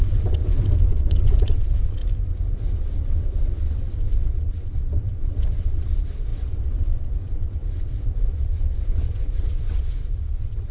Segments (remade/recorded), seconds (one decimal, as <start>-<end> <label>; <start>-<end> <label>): 0.0-0.4 remade; 0.4-0.9 recorded; 0.9-2.0 remade; 2.0-2.8 recorded; 2.8-10.7 remade